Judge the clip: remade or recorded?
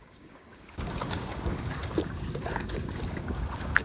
remade